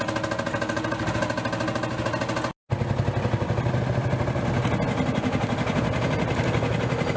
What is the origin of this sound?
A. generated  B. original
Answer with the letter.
B